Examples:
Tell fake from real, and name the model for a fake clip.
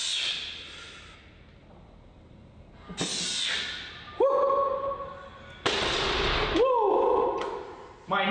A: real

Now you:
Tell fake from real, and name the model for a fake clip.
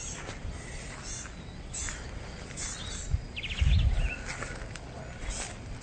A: real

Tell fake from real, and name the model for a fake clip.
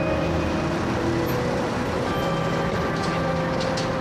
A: real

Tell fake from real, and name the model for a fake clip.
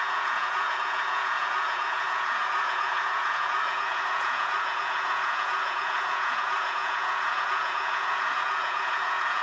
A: fake, vocoder, Vocos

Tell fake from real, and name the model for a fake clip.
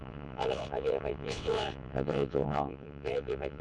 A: fake, vocoder, WaveNeXt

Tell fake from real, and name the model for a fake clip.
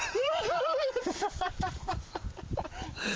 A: fake, vocoder, BigVGAN v2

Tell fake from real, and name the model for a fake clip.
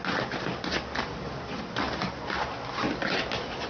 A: real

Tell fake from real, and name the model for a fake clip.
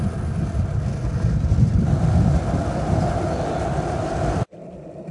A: real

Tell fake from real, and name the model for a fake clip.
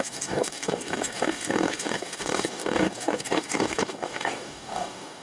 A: fake, codec, DAC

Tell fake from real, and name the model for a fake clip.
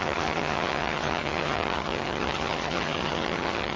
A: fake, vocoder, HiFi-GAN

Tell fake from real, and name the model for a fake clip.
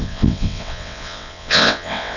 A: fake, vocoder, WaveNeXt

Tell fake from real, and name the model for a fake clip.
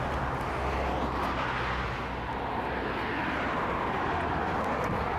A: real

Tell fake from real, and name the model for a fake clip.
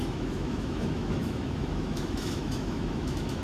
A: fake, autoencoder, DAC-VAE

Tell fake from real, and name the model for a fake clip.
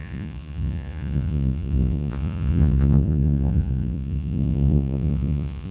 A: fake, vocoder, Vocos